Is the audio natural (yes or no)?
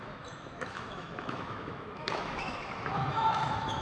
no